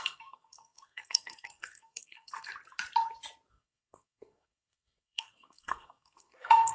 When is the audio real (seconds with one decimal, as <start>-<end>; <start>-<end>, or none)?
2.5-3.5